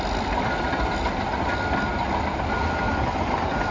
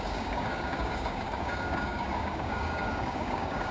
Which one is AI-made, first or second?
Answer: second